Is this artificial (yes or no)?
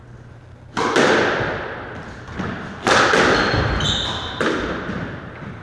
no